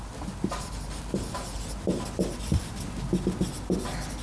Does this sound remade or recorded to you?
recorded